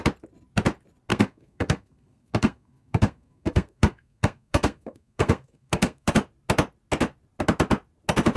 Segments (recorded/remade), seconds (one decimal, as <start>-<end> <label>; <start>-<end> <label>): 0.0-1.1 recorded; 1.1-6.1 remade; 6.1-8.4 recorded